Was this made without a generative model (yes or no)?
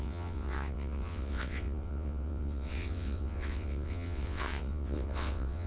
no